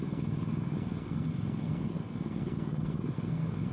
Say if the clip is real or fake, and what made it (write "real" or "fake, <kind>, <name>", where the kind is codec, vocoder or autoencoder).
fake, codec, SNAC